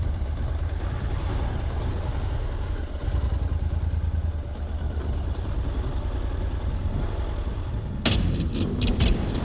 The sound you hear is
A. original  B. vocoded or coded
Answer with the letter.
A